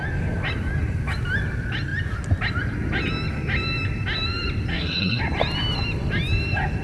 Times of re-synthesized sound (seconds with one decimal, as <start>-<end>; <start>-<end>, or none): 4.7-5.2